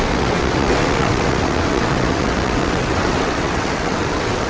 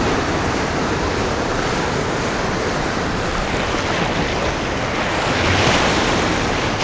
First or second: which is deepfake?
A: first